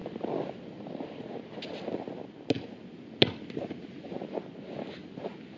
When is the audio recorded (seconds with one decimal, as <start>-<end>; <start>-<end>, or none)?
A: 0.0-5.6